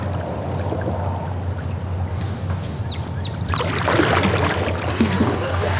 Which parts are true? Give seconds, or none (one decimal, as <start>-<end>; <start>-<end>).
0.0-2.1; 2.8-4.9